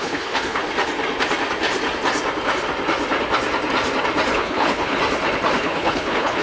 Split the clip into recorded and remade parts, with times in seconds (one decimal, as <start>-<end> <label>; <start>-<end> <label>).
0.0-0.6 remade; 0.6-4.3 recorded; 4.3-5.0 remade; 5.0-5.6 recorded; 5.6-6.4 remade